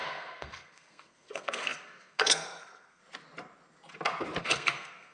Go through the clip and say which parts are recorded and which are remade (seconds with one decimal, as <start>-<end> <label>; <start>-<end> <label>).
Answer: 0.0-3.0 remade; 3.0-4.4 recorded; 4.4-5.1 remade